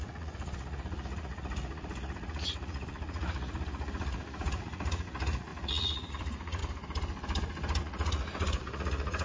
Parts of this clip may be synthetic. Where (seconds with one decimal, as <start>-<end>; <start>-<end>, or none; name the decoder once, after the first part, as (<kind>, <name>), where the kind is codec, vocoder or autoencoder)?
0.0-6.6 (vocoder, Vocos); 7.8-9.2